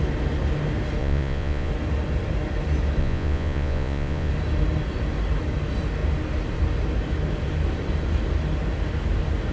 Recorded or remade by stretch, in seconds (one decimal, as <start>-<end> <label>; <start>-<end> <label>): 0.0-1.0 recorded; 1.0-1.7 remade; 1.7-3.0 recorded; 3.0-4.3 remade; 4.3-9.5 recorded